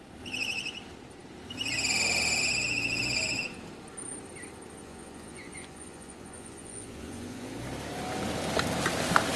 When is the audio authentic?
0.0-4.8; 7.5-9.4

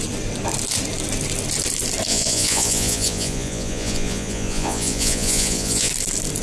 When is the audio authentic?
0.0-2.1; 5.9-6.4

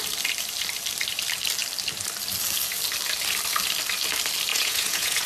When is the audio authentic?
0.0-4.5

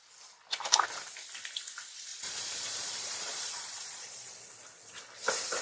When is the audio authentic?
0.0-2.1; 4.3-5.6

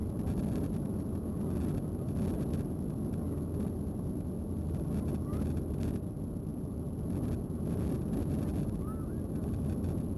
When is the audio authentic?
0.0-10.2

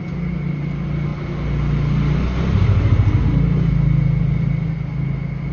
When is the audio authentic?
0.0-5.5

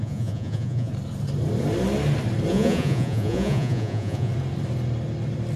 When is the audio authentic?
0.9-2.5; 4.3-5.6